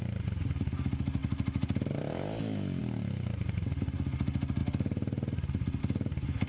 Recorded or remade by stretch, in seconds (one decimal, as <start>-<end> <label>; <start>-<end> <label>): 0.0-6.5 recorded